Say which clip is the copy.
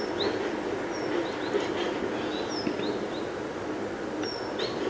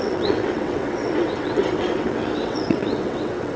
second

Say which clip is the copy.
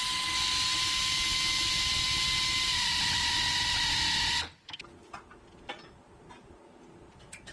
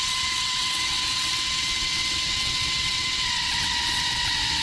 second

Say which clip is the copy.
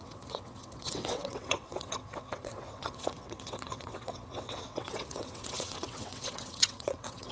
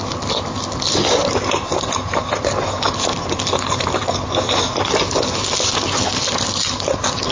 first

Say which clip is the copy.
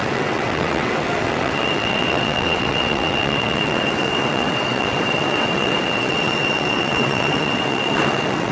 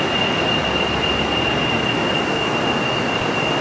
first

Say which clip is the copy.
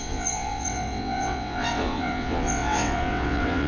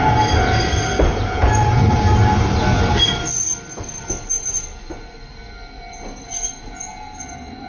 first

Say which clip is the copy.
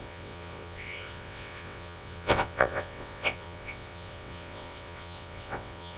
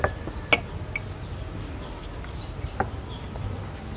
first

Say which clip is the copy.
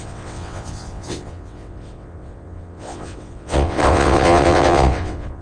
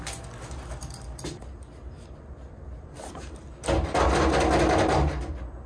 first